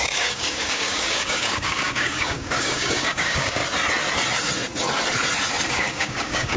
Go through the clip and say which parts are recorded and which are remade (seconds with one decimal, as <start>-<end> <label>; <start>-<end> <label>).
0.0-3.6 remade; 3.6-5.7 recorded; 5.7-6.6 remade